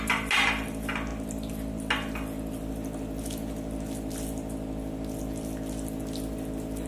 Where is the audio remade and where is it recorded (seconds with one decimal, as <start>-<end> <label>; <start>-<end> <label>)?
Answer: 0.0-6.9 recorded